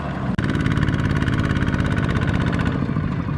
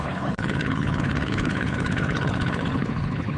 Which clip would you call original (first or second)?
first